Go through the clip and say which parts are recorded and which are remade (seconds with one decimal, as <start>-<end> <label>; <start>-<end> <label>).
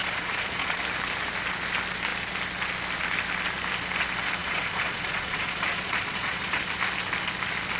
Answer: 0.0-0.8 remade; 0.8-4.4 recorded; 4.4-6.6 remade; 6.6-7.8 recorded